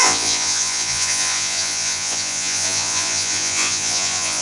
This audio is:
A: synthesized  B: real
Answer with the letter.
A